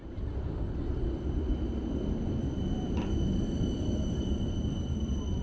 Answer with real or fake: real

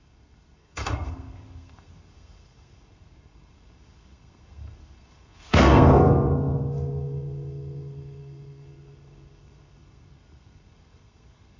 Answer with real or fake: fake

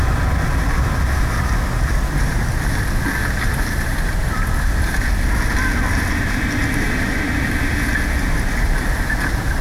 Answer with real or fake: real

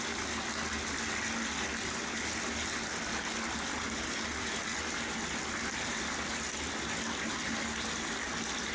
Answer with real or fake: real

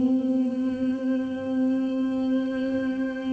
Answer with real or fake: fake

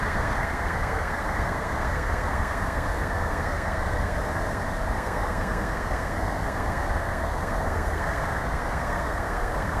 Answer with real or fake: fake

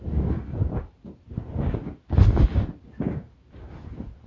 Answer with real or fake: real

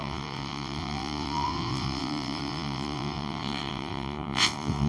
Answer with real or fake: fake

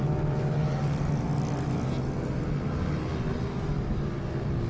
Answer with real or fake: real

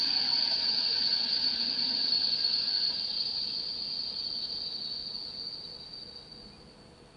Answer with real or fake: real